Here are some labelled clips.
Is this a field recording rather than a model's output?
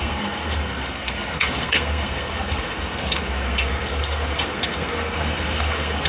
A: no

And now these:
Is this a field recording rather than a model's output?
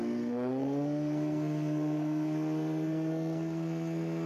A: no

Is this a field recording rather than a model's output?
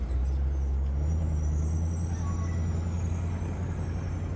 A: yes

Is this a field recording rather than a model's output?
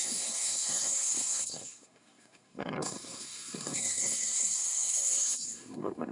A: no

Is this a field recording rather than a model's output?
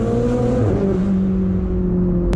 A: yes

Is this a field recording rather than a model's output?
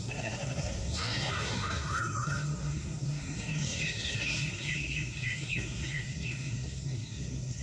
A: no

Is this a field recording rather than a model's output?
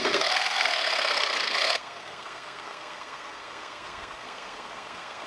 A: no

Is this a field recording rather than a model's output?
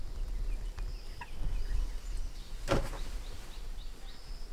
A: yes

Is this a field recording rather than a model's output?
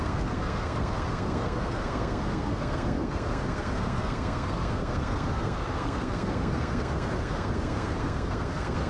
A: no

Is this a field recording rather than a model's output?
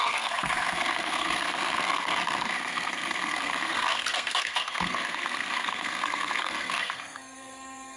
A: no